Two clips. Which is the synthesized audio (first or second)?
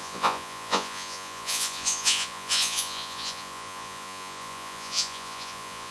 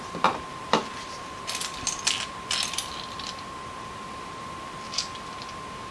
first